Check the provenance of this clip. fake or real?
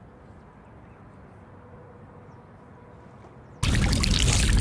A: real